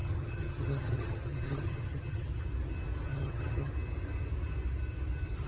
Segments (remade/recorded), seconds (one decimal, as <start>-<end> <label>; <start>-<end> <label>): 0.0-2.3 remade; 2.3-3.1 recorded; 3.1-3.7 remade; 3.7-5.5 recorded